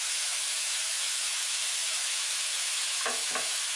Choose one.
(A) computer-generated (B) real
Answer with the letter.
A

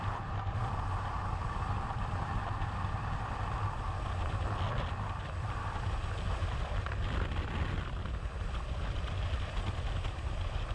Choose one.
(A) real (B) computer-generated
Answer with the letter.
A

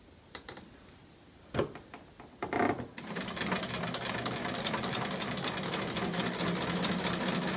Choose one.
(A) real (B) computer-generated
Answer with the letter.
A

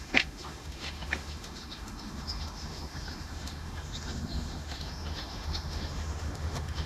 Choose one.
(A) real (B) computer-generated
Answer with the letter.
B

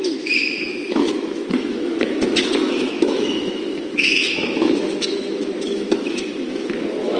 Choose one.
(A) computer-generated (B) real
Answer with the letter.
A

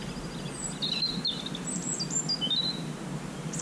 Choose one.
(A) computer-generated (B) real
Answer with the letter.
B